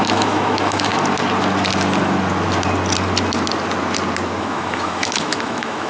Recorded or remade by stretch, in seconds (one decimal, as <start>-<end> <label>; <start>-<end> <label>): 0.0-0.9 remade; 0.9-4.4 recorded; 4.4-5.9 remade